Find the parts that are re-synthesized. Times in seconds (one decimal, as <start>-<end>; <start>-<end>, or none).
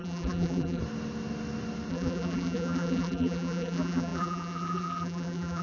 0.0-0.8; 1.9-5.6